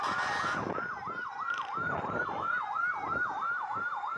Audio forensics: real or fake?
fake